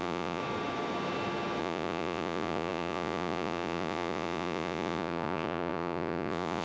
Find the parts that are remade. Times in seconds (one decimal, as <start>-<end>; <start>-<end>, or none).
0.0-0.4; 1.6-6.6